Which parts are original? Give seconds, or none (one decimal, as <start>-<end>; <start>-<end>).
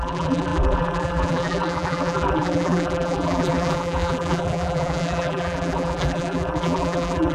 none